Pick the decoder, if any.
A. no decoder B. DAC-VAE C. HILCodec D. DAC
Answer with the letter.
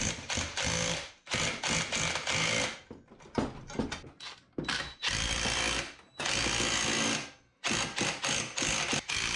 A